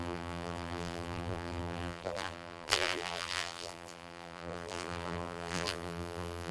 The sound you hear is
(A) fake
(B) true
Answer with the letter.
A